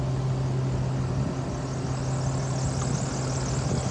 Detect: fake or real real